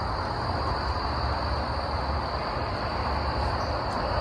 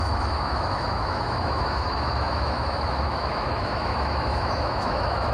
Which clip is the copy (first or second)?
second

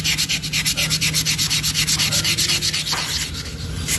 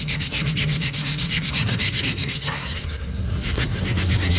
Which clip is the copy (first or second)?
second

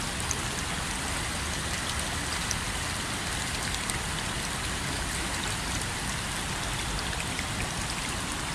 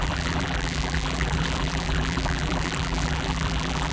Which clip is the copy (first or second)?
second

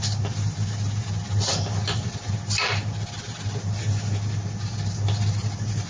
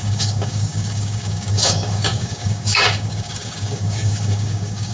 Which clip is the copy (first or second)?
second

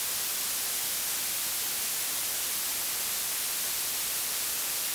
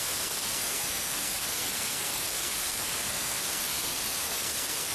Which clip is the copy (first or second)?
second